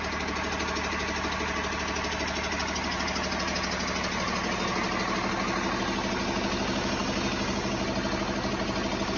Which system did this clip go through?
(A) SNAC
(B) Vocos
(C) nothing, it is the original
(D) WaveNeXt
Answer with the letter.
C